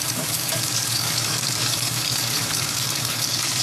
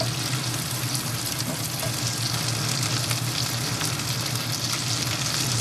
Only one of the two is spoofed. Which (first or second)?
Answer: first